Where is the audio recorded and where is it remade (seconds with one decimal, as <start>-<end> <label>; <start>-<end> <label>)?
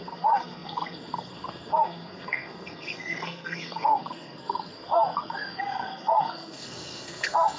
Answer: 0.0-7.6 remade